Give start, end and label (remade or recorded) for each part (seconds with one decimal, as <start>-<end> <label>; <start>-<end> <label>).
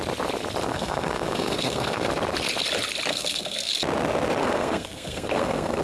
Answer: 0.0-0.7 recorded; 0.7-2.1 remade; 2.1-3.1 recorded; 3.1-3.7 remade; 3.7-4.4 recorded; 4.4-5.8 remade